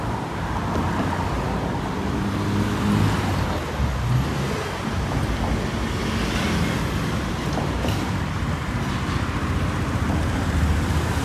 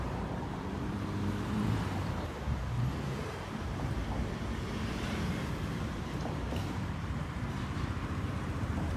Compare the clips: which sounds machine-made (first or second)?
second